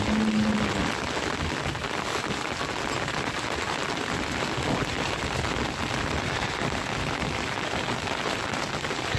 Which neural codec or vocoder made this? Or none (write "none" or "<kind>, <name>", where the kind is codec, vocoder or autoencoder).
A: none